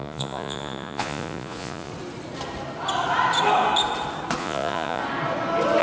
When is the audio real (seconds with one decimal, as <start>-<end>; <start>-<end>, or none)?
1.9-4.4; 5.0-5.8